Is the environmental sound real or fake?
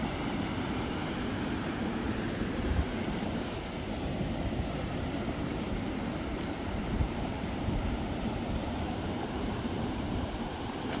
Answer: fake